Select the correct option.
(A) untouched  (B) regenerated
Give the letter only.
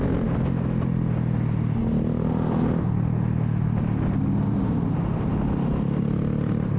A